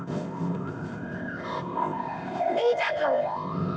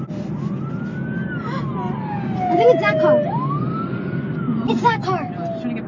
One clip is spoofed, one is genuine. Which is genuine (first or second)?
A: second